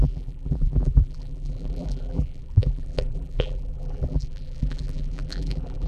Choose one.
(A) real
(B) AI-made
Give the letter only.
B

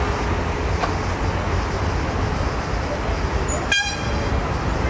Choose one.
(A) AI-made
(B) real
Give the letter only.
B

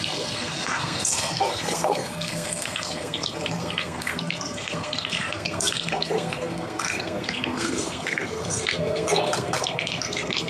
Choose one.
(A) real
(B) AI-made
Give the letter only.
B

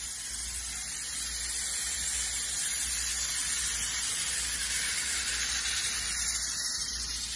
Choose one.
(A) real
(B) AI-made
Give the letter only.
A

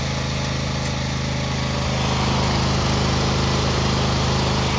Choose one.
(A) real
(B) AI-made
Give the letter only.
A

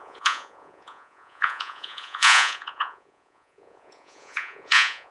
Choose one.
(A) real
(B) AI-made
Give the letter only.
B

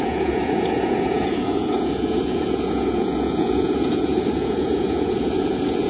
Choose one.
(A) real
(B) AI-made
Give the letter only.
B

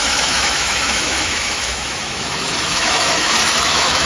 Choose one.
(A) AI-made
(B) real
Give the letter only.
A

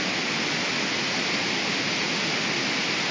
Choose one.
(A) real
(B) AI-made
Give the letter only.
A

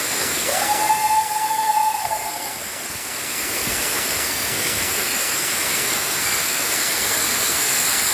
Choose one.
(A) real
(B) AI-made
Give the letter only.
B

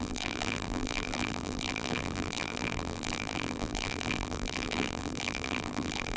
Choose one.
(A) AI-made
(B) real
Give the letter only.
A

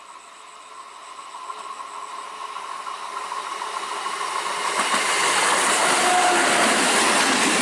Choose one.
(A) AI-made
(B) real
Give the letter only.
B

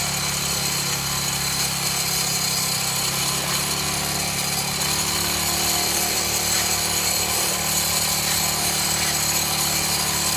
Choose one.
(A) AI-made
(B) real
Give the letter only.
B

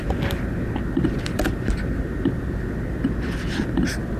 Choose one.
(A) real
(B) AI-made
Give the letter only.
A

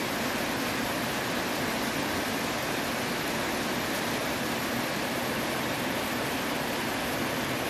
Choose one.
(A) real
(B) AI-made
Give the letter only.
A